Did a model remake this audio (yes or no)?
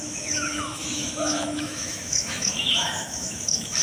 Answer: yes